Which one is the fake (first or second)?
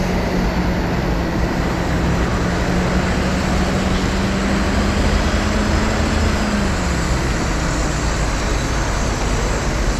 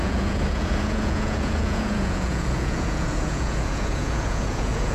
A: second